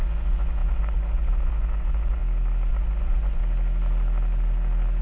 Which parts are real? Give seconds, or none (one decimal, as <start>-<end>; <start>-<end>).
2.2-2.7; 3.4-5.0